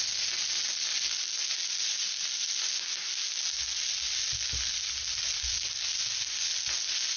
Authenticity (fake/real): real